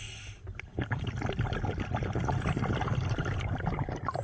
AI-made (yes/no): no